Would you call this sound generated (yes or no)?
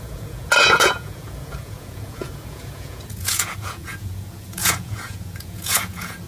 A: yes